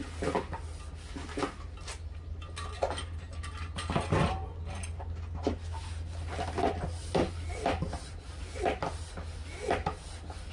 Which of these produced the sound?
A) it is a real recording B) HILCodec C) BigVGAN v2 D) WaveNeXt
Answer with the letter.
A